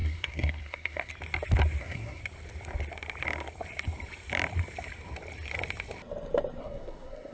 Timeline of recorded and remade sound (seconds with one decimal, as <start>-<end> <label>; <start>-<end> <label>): 0.0-1.1 remade; 1.1-1.8 recorded; 1.8-2.2 remade; 2.2-6.6 recorded; 6.6-7.3 remade